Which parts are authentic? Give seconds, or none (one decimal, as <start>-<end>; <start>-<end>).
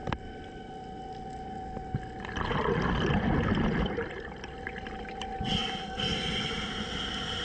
0.0-7.4